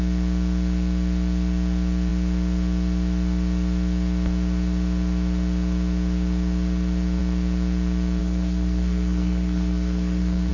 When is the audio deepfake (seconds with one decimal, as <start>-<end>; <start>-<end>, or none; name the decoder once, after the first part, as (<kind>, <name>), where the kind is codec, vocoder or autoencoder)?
8.2-10.5 (codec, SNAC)